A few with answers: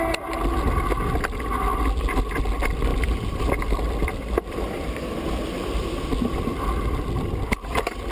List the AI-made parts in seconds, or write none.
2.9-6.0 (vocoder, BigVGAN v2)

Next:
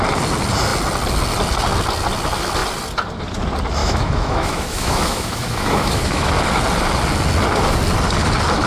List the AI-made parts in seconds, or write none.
3.8-6.3 (autoencoder, DAC-VAE)

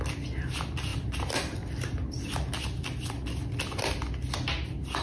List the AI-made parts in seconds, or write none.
none

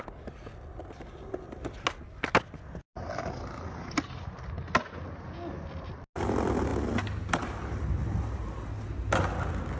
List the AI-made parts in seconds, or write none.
none

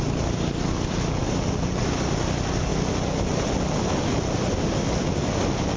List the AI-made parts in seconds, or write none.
none

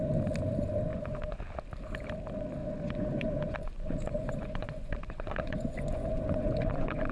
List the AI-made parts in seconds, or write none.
0.9-1.4 (vocoder, Vocos); 2.6-7.1

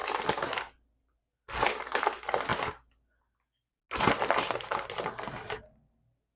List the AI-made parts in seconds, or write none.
none